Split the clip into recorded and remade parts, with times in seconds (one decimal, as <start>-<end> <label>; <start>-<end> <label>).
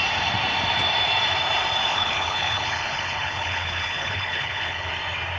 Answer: 0.0-1.9 recorded; 1.9-4.9 remade; 4.9-5.4 recorded